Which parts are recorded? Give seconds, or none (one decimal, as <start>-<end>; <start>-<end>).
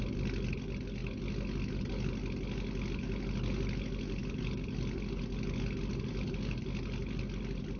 0.0-7.8